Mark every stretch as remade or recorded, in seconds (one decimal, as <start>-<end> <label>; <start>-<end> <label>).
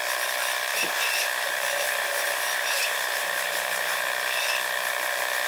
0.0-0.7 recorded; 0.7-4.0 remade; 4.0-5.5 recorded